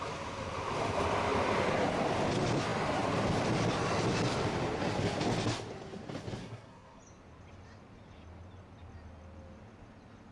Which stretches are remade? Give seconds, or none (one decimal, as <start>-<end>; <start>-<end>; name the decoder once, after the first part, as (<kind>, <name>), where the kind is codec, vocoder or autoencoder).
6.4-7.0 (codec, SNAC)